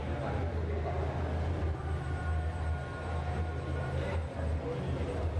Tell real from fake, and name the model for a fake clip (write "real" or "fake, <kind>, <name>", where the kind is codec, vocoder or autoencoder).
real